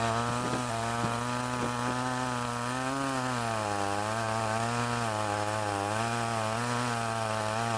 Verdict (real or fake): real